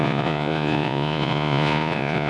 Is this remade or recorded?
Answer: remade